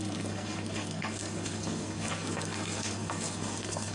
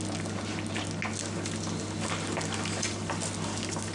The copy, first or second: first